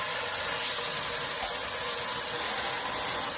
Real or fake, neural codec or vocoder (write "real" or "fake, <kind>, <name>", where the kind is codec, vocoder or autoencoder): real